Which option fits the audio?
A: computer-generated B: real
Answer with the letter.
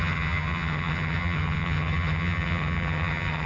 A